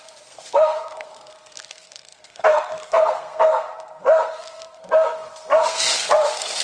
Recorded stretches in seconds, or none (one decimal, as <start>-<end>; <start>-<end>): none

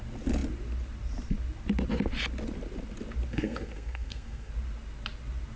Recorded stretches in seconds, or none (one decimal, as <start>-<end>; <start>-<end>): 0.0-3.3; 4.5-5.6

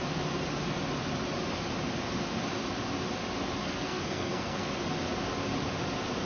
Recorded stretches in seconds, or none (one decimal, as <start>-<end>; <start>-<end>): 0.0-3.6; 4.7-6.3

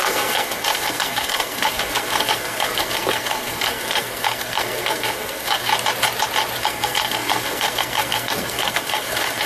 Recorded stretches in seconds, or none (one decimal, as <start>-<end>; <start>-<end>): 5.7-6.6

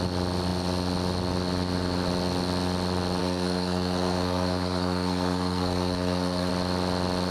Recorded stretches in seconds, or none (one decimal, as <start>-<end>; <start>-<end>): 0.0-3.2; 6.5-7.3

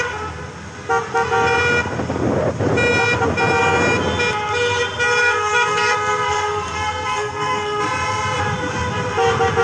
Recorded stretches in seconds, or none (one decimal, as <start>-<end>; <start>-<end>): 0.0-5.2; 7.8-9.6